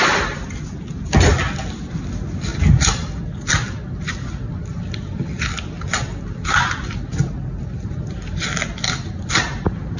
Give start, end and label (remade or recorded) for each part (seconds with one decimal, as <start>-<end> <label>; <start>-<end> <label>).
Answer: 0.0-10.0 recorded

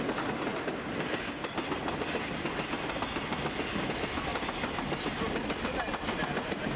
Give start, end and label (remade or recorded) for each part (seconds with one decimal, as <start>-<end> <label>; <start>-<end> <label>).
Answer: 0.0-6.8 recorded

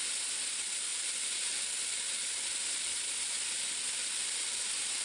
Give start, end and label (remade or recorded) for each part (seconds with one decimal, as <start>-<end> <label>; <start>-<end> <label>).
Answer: 0.0-5.0 recorded

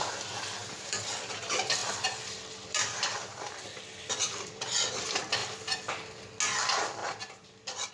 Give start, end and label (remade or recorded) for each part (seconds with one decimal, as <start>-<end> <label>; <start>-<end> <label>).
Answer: 0.0-0.6 recorded; 0.6-1.2 remade; 1.2-1.8 recorded; 1.8-5.0 remade; 5.0-5.4 recorded; 5.4-5.9 remade; 5.9-7.0 recorded; 7.0-7.9 remade